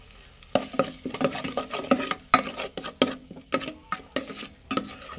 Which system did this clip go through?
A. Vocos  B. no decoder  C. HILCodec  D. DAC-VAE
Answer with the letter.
B